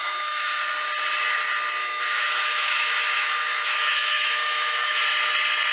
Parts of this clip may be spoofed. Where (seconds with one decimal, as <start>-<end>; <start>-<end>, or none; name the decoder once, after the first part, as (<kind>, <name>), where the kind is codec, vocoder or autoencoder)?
0.0-0.6 (autoencoder, DAC-VAE); 1.8-5.0